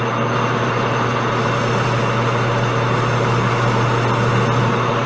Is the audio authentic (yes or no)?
yes